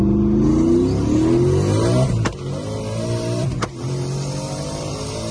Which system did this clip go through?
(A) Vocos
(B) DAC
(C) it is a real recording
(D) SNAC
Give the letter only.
C